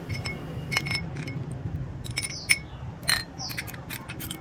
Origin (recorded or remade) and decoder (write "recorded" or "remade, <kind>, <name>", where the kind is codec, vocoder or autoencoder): recorded